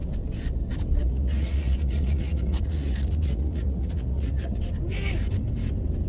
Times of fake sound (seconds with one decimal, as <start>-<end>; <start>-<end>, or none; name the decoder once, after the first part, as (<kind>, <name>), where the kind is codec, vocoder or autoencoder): 1.0-4.6 (vocoder, Vocos)